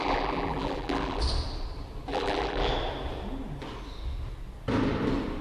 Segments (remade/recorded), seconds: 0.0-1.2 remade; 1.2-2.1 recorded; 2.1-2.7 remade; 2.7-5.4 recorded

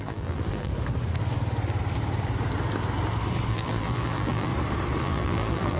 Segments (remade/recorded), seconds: 0.0-0.7 remade; 0.7-3.5 recorded; 3.5-4.5 remade; 4.5-5.0 recorded; 5.0-5.8 remade

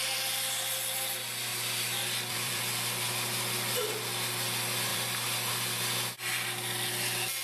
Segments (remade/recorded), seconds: 0.0-1.5 recorded; 1.5-3.1 remade; 3.1-4.9 recorded; 4.9-5.5 remade; 5.5-7.4 recorded

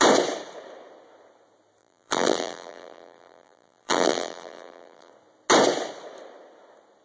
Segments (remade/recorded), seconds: 0.0-1.8 recorded; 1.8-5.1 remade; 5.1-7.0 recorded

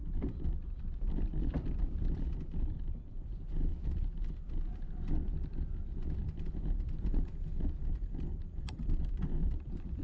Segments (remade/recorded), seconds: 0.0-3.1 recorded; 3.1-3.7 remade; 3.7-6.6 recorded; 6.6-10.0 remade

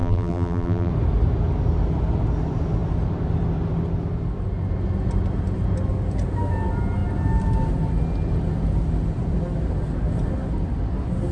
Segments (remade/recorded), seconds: 0.0-0.9 remade; 0.9-11.3 recorded

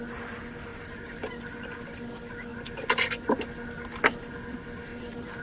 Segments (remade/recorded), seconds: 0.0-0.7 recorded; 0.7-1.3 remade; 1.3-4.9 recorded; 4.9-5.4 remade

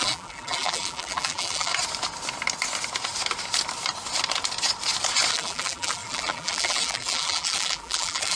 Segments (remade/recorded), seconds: 0.0-1.7 remade; 1.7-5.3 recorded; 5.3-8.4 remade